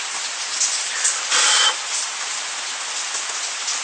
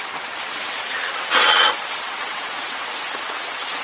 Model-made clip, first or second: second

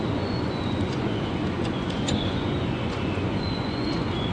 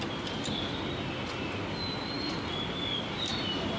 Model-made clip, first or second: first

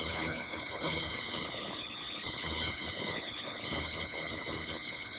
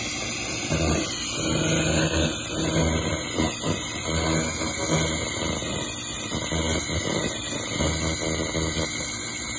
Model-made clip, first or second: first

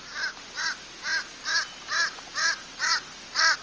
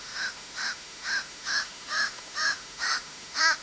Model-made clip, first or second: second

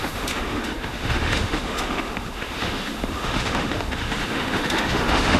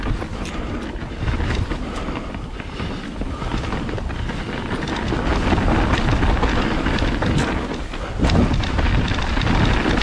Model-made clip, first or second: first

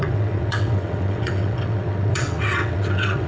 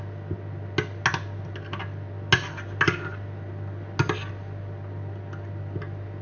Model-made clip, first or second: first